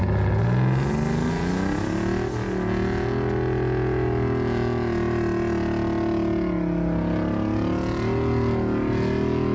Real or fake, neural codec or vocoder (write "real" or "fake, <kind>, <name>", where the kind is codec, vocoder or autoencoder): real